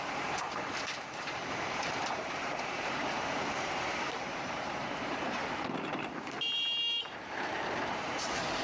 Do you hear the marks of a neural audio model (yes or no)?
yes